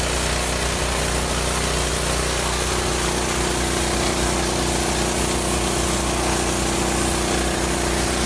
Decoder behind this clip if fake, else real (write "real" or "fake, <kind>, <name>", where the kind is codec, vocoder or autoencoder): real